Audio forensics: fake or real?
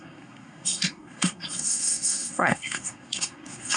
fake